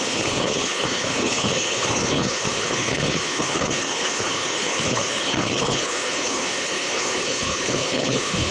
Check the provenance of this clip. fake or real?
fake